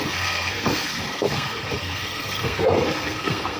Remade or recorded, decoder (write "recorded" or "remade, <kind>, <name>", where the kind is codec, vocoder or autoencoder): remade, codec, SNAC